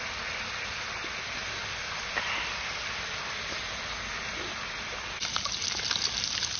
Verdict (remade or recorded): recorded